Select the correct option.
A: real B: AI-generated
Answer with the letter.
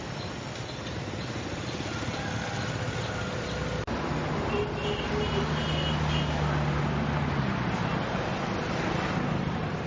A